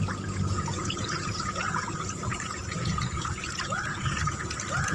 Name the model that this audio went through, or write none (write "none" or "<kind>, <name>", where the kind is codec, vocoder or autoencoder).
vocoder, Vocos